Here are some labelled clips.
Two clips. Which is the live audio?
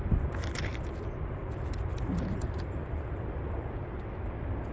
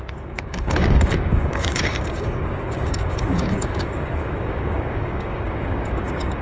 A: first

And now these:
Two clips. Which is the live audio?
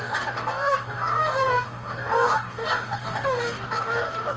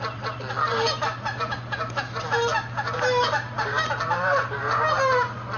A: second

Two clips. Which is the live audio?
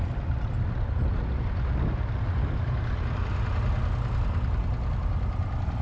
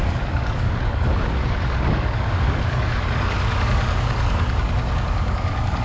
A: first